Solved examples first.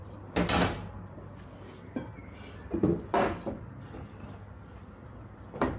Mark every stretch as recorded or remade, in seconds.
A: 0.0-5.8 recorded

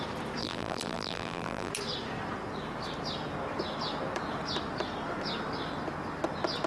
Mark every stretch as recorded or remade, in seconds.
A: 0.0-0.4 recorded; 0.4-1.7 remade; 1.7-6.7 recorded

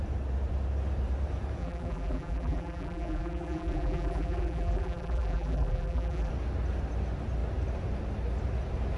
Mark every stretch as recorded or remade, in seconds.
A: 0.0-1.6 recorded; 1.6-6.3 remade; 6.3-9.0 recorded

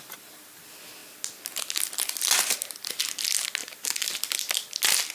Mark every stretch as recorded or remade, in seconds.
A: 0.0-3.6 recorded; 3.6-4.2 remade; 4.2-5.1 recorded

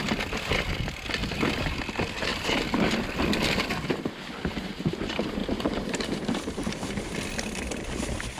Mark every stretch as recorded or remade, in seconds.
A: 0.0-1.2 recorded; 1.2-1.8 remade; 1.8-5.4 recorded; 5.4-7.1 remade; 7.1-8.4 recorded

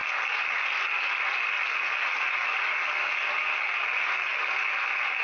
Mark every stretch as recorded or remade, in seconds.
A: 0.0-5.2 recorded

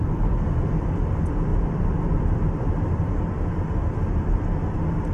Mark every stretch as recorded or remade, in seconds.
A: 0.0-3.8 remade; 3.8-5.1 recorded

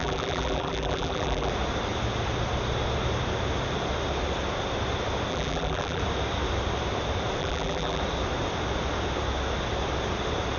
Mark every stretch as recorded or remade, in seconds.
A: 0.0-1.5 remade; 1.5-5.3 recorded; 5.3-6.0 remade; 6.0-7.4 recorded; 7.4-8.0 remade; 8.0-10.6 recorded